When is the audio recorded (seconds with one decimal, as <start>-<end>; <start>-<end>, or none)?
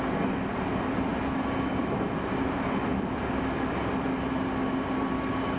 0.0-5.6